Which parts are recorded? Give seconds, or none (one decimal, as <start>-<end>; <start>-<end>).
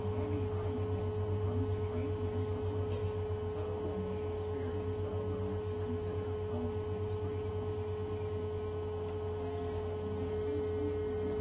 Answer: 0.0-11.4